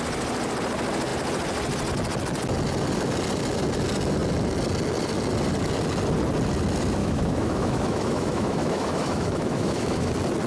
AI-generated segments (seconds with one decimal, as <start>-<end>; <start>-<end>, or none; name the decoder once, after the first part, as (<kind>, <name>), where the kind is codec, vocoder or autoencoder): 7.0-10.1 (autoencoder, DAC-VAE)